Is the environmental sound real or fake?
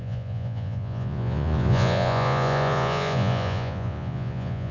fake